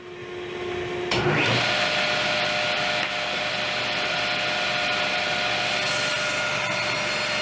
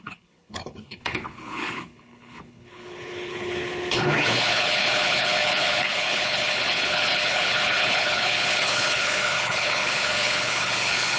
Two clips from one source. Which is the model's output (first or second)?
second